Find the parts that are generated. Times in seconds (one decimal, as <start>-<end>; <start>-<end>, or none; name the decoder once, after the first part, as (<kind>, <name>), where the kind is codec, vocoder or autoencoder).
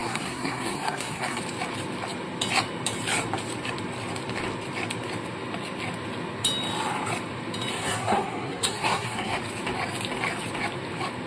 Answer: 0.0-1.4 (codec, SNAC); 7.7-9.4